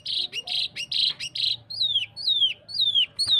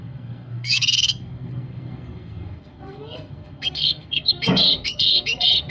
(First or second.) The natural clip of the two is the first